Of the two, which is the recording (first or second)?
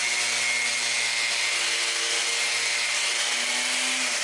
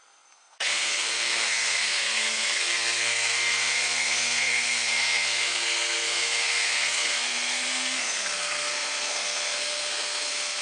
first